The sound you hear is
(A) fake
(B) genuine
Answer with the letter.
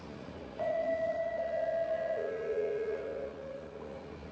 A